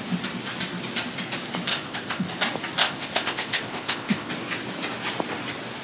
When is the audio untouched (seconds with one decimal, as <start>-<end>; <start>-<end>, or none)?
0.0-1.7; 2.3-2.8; 4.3-5.8